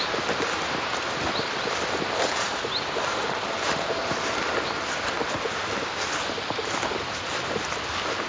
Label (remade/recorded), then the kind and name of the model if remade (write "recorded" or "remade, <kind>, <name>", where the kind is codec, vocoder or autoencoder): recorded